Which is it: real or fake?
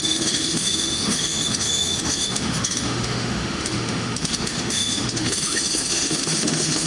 fake